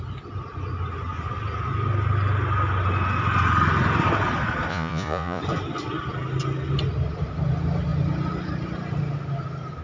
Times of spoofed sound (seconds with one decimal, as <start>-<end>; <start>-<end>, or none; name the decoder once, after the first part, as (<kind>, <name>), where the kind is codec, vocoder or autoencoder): 4.7-5.4 (vocoder, Vocos)

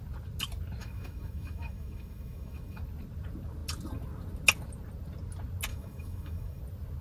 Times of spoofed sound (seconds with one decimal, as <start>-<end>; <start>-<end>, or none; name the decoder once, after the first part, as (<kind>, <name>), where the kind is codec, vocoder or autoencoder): 0.8-2.8 (autoencoder, DAC-VAE); 5.7-6.6

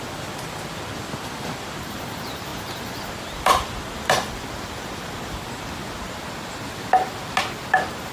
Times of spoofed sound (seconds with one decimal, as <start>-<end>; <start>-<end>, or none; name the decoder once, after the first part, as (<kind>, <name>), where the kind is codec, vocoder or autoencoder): 0.0-5.8 (vocoder, BigVGAN v2)

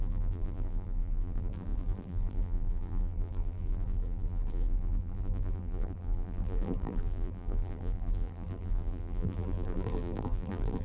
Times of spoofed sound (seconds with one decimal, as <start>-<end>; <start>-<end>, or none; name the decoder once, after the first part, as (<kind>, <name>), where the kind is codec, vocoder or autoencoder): 0.0-10.8 (vocoder, BigVGAN v2)

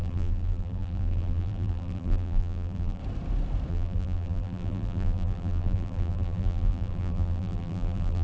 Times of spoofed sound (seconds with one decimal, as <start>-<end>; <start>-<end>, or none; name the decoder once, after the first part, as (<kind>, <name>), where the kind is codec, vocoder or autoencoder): 0.0-3.0 (vocoder, BigVGAN v2); 3.7-8.2

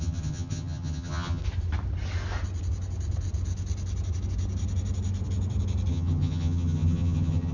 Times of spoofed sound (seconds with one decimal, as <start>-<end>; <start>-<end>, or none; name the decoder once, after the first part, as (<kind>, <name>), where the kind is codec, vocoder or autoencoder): 0.0-1.4 (vocoder, HiFi-GAN); 5.9-7.5